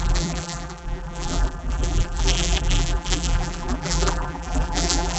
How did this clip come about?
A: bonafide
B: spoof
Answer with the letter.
B